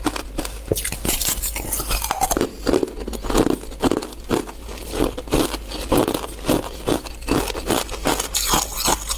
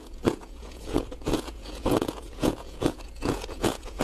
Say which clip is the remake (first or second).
second